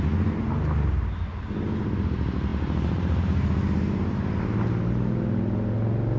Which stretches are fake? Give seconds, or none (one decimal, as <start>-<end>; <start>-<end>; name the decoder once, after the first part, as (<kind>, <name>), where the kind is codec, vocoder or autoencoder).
none